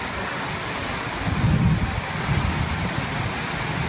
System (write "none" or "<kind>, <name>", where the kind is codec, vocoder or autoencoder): none